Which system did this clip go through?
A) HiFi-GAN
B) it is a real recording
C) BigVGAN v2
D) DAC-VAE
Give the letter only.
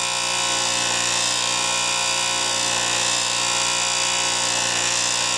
B